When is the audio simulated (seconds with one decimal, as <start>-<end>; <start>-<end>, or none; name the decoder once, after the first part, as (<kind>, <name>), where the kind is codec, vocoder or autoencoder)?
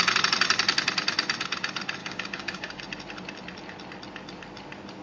2.0-2.8 (codec, DAC)